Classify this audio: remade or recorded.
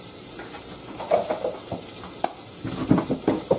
recorded